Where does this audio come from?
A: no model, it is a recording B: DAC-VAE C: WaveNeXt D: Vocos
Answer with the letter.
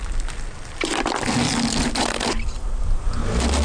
A